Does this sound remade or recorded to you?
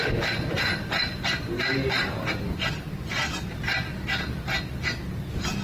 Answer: recorded